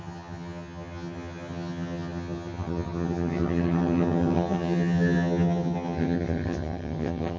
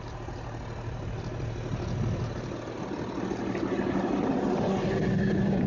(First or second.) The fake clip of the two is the first